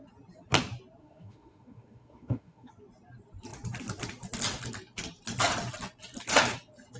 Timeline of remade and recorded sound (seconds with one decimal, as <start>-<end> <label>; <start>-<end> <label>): 0.0-1.0 recorded; 1.0-2.7 remade; 2.7-7.0 recorded